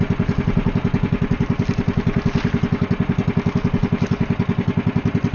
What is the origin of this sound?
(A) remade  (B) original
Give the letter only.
B